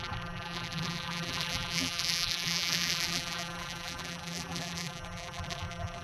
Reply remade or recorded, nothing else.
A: remade